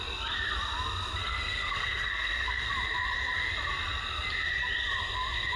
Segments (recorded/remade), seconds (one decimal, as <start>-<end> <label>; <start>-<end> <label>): 0.0-1.2 recorded; 1.2-2.7 remade; 2.7-5.6 recorded